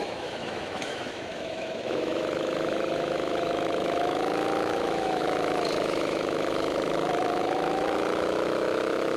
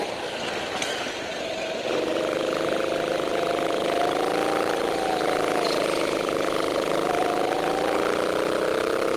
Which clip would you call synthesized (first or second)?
first